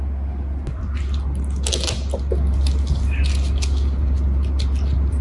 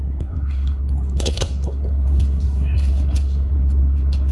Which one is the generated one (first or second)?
second